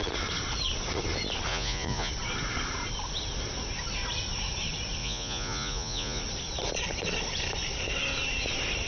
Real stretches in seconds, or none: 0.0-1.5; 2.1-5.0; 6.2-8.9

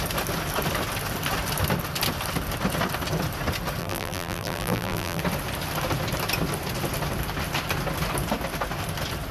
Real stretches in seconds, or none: 0.0-3.8; 5.2-9.3

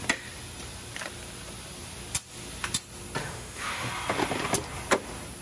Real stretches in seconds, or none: 0.0-3.2; 3.9-5.4